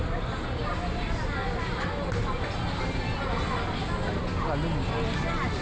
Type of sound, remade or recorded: recorded